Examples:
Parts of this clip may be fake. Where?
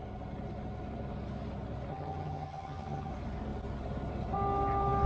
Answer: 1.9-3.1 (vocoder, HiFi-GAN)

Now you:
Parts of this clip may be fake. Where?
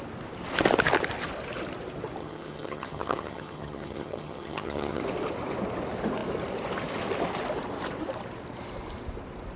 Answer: 2.2-5.0 (vocoder, HiFi-GAN)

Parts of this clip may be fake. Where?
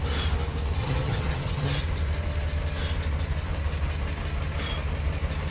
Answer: 0.8-1.8 (vocoder, HiFi-GAN)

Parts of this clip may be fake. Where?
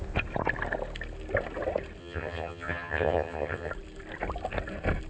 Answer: 2.0-3.7 (vocoder, HiFi-GAN)